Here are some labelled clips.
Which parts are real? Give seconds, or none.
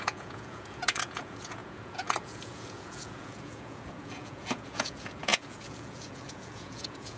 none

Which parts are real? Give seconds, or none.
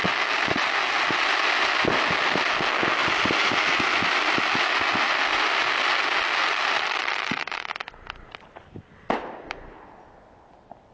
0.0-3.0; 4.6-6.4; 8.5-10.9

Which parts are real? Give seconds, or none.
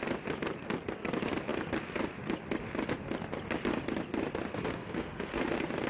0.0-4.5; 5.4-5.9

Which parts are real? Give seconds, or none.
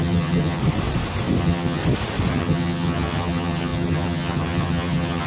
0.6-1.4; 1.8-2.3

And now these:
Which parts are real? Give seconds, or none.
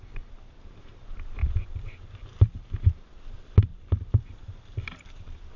0.0-1.4; 2.4-3.7; 4.4-5.6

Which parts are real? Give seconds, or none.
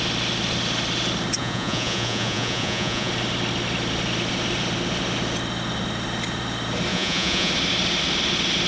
0.0-1.4; 3.1-6.9; 7.5-8.7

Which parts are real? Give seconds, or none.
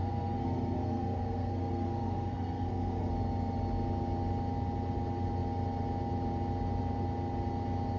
3.1-8.0